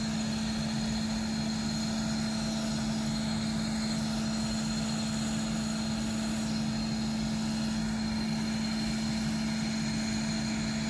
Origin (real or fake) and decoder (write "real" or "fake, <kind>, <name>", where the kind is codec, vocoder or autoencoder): real